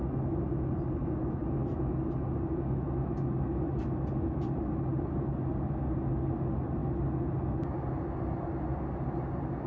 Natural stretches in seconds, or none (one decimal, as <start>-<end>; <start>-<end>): 0.0-9.7